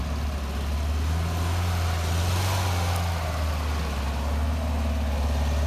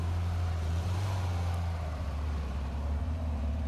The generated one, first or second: second